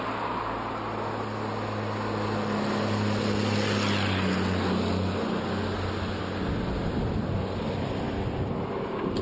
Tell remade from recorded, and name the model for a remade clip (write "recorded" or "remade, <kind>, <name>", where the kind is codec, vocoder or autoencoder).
recorded